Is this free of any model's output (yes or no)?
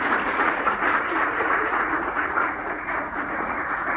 no